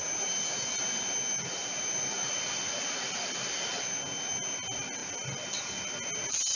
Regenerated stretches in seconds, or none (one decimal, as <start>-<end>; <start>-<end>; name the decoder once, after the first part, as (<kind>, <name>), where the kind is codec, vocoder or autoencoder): none